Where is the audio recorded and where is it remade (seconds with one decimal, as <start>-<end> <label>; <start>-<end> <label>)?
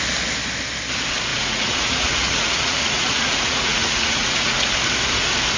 0.0-1.3 recorded; 1.3-4.7 remade; 4.7-5.6 recorded